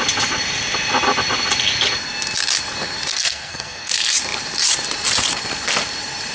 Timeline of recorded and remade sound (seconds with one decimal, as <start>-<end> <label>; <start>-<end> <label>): 0.0-3.1 recorded; 3.1-3.9 remade; 3.9-6.3 recorded